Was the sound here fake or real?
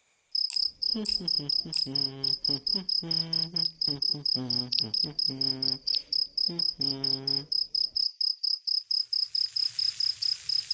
real